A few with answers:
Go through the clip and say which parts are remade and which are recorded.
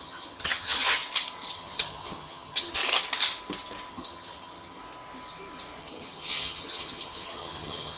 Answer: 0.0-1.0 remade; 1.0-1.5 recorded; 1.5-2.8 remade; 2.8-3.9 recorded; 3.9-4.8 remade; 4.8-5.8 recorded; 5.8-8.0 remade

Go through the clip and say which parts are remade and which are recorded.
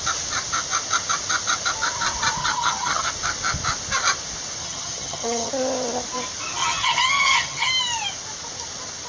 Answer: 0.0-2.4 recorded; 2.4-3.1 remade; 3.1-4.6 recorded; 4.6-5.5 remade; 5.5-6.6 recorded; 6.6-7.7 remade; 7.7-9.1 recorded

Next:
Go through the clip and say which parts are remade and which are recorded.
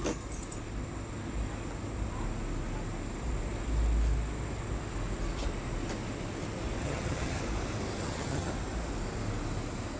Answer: 0.0-6.8 recorded; 6.8-7.4 remade; 7.4-8.0 recorded; 8.0-8.5 remade; 8.5-10.0 recorded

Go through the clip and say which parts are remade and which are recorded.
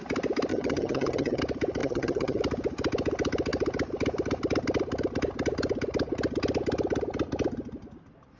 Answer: 0.0-0.5 recorded; 0.5-1.4 remade; 1.4-1.8 recorded; 1.8-2.4 remade; 2.4-8.4 recorded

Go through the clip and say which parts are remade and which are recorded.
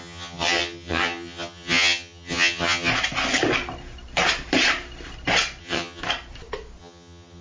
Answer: 0.0-2.9 remade; 2.9-5.6 recorded; 5.6-6.0 remade; 6.0-6.8 recorded; 6.8-7.4 remade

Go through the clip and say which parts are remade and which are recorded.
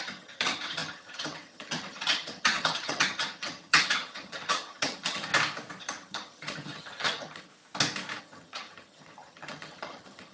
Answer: 0.0-5.3 remade; 5.3-5.8 recorded; 5.8-7.5 remade; 7.5-8.2 recorded; 8.2-10.3 remade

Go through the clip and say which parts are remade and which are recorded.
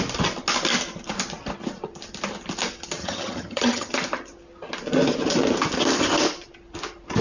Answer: 0.0-3.0 recorded; 3.0-3.9 remade; 3.9-7.2 recorded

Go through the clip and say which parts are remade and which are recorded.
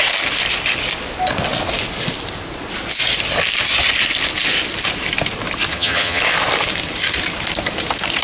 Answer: 0.0-5.7 recorded; 5.7-6.2 remade; 6.2-8.2 recorded